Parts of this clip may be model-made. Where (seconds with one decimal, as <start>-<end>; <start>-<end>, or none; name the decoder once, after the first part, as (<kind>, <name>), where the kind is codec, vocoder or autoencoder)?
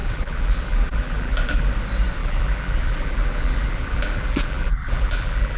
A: 0.0-1.7 (vocoder, BigVGAN v2); 2.2-5.6